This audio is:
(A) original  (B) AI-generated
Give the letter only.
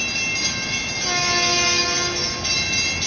A